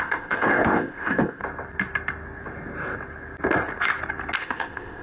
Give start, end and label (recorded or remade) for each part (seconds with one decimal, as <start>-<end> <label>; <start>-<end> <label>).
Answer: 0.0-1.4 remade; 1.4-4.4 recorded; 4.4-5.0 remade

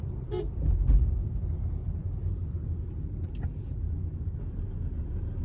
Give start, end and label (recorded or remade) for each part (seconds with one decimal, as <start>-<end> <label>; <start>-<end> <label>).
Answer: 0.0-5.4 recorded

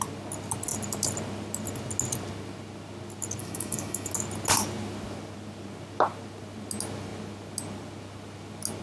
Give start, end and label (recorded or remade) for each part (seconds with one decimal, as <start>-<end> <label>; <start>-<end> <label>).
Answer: 0.0-3.4 recorded; 3.4-4.1 remade; 4.1-8.8 recorded

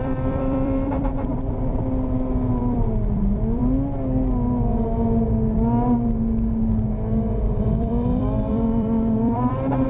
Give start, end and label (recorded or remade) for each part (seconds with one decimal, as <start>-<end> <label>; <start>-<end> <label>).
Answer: 0.0-1.3 remade; 1.3-2.6 recorded; 2.6-3.6 remade; 3.6-7.6 recorded; 7.6-9.9 remade

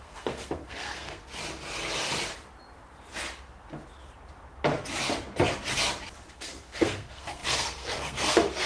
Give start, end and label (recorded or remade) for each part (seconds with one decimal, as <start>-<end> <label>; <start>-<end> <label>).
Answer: 0.0-1.4 remade; 1.4-6.3 recorded; 6.3-8.7 remade